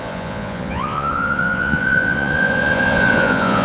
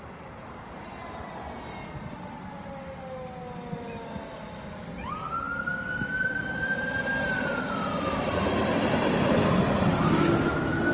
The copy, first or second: first